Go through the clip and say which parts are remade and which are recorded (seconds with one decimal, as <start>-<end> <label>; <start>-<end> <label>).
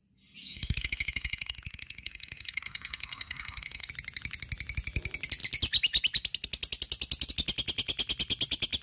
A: 0.0-0.4 recorded; 0.4-3.9 remade; 3.9-8.8 recorded